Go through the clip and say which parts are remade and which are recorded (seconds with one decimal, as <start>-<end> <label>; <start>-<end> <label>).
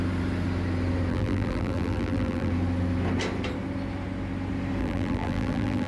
0.0-1.1 recorded; 1.1-2.5 remade; 2.5-4.8 recorded; 4.8-5.9 remade